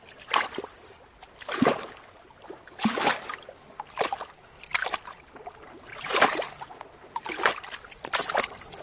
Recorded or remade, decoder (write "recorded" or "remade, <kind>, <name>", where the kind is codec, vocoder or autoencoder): recorded